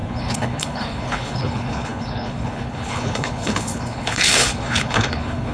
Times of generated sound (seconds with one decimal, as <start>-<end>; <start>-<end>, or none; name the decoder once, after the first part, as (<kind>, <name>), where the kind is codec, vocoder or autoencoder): 0.0-5.5 (codec, HILCodec)